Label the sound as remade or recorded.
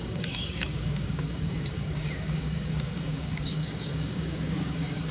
remade